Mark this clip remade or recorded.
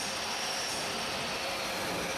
recorded